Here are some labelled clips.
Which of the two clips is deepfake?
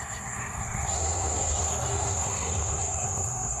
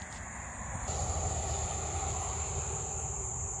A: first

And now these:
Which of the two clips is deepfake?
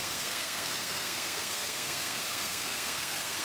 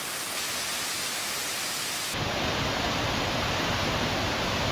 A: first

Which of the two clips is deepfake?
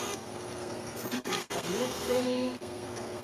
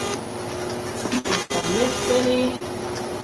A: first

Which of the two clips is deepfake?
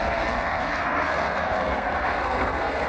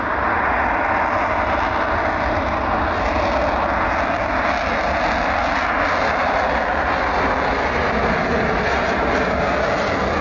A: first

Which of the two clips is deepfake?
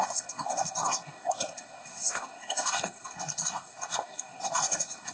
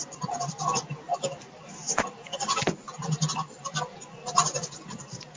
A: first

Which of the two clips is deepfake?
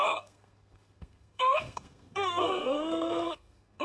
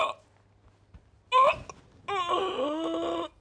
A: first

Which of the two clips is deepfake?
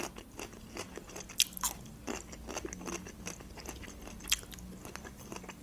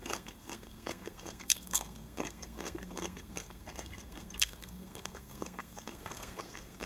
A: second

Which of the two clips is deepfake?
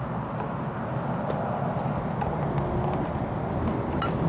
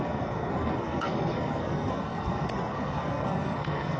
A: second